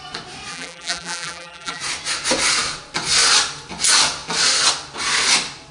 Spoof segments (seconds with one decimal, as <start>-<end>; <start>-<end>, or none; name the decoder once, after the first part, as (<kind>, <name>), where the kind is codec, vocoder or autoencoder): 0.5-1.8 (vocoder, BigVGAN v2)